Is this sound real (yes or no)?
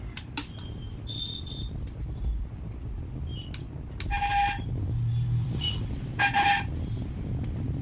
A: yes